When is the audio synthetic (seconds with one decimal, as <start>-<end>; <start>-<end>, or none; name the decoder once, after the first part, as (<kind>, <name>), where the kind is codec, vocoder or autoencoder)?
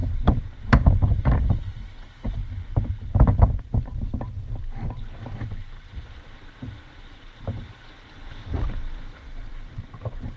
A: 8.5-9.5 (vocoder, BigVGAN v2)